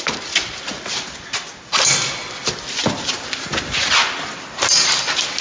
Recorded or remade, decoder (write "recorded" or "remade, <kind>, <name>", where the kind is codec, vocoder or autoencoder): recorded